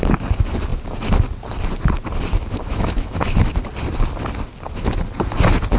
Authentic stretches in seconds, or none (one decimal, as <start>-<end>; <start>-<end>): 0.0-2.7; 3.4-5.8